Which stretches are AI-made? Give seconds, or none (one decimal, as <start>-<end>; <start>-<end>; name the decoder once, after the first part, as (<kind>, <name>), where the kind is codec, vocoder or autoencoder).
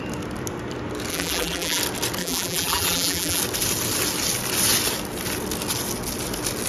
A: 1.1-1.8 (vocoder, BigVGAN v2); 2.2-3.4